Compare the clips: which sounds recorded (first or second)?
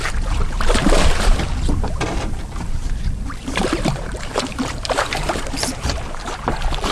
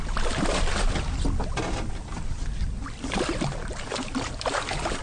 second